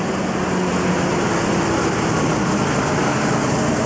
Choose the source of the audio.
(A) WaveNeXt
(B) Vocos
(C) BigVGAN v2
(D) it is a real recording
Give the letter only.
D